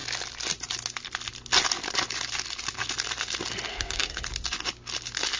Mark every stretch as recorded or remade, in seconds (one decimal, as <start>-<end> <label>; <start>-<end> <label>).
0.0-3.7 recorded; 3.7-4.2 remade; 4.2-5.4 recorded